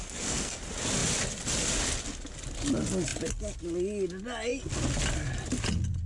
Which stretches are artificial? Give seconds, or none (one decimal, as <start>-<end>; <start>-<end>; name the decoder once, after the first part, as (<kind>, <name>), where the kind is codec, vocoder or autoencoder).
0.0-0.6 (codec, SNAC)